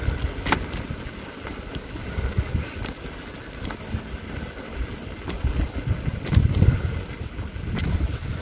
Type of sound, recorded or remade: recorded